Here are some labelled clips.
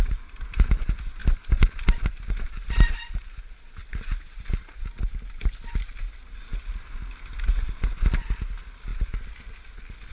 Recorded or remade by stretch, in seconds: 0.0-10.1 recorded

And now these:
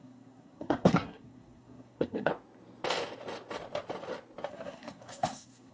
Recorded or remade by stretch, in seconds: 0.0-2.3 remade; 2.3-4.5 recorded; 4.5-5.7 remade

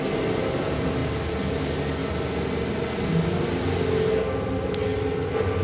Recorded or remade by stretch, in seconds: 0.0-5.6 recorded

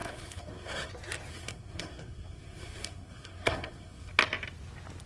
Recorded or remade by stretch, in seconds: 0.0-0.9 remade; 0.9-1.3 recorded; 1.3-4.1 remade; 4.1-5.1 recorded